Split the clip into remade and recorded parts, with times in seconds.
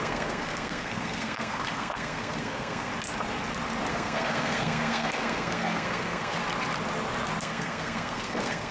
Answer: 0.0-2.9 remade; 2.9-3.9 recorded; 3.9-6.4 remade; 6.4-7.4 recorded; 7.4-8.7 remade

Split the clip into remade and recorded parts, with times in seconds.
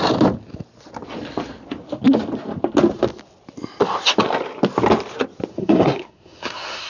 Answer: 0.0-5.5 recorded; 5.5-6.9 remade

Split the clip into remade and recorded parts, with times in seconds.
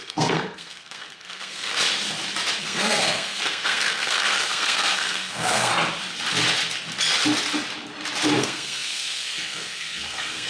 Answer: 0.0-1.7 remade; 1.7-2.6 recorded; 2.6-5.7 remade; 5.7-8.4 recorded; 8.4-10.5 remade